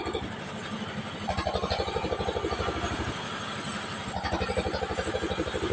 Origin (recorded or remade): recorded